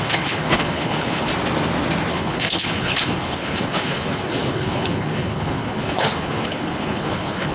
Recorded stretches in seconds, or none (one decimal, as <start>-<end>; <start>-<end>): 1.3-2.1